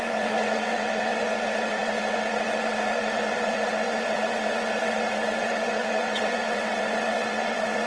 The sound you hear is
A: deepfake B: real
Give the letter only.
A